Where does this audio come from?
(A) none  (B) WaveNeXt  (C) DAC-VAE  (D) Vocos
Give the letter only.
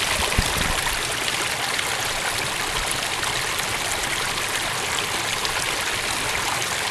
A